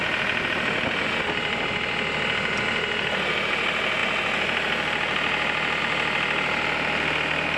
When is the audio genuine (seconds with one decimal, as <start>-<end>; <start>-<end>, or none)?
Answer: 0.0-7.6